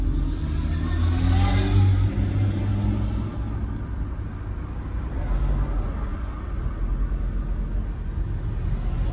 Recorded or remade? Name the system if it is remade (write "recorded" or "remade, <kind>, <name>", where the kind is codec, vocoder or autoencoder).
recorded